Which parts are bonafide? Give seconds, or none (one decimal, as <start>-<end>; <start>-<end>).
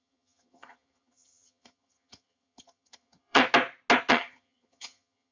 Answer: 3.4-4.1